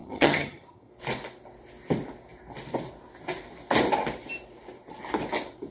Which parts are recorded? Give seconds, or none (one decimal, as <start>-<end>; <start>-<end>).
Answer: 0.9-5.7